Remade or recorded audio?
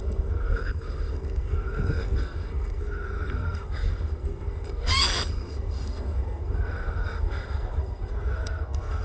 remade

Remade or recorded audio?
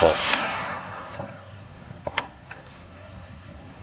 remade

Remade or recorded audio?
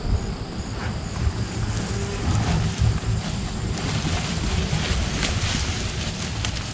recorded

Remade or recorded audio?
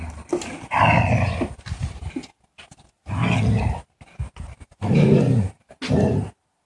recorded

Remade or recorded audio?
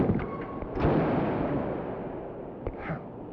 recorded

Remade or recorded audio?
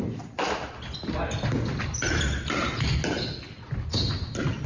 recorded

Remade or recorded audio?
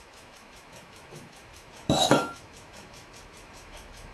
remade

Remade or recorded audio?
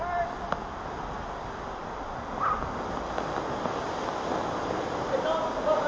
recorded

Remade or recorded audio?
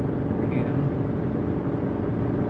recorded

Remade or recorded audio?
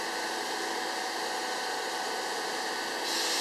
recorded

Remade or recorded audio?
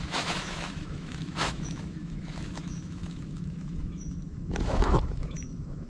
remade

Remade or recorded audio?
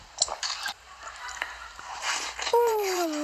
remade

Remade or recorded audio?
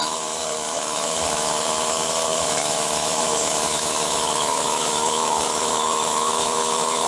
remade